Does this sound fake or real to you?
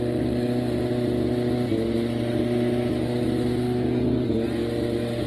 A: real